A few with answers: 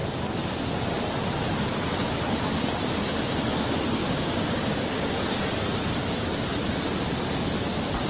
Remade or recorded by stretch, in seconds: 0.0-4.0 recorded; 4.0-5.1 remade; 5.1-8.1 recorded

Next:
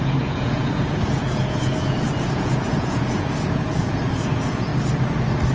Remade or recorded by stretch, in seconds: 0.0-4.7 remade; 4.7-5.5 recorded

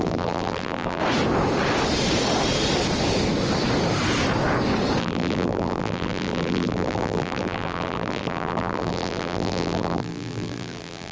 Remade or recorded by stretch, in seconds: 0.0-1.0 remade; 1.0-5.0 recorded; 5.0-11.1 remade

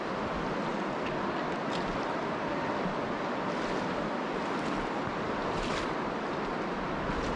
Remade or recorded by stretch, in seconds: 0.0-7.4 recorded

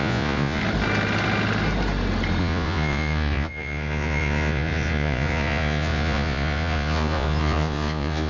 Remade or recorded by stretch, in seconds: 0.0-0.6 remade; 0.6-2.4 recorded; 2.4-8.3 remade